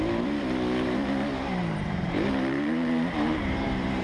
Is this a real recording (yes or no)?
no